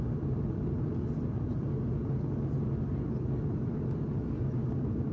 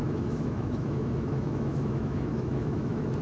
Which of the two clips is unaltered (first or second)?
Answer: first